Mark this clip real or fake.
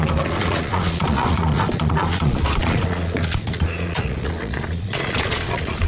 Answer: fake